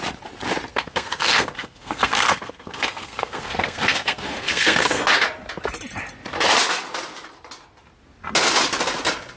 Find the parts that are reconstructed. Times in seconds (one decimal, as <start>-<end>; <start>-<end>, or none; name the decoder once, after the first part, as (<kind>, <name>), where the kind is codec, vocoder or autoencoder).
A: 0.7-5.0 (codec, SNAC)